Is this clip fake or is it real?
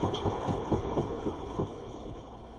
fake